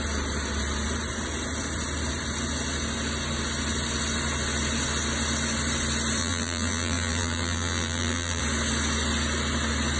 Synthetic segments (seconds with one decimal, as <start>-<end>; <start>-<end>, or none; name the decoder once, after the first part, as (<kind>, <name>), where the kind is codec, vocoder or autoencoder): 6.2-8.4 (vocoder, BigVGAN v2)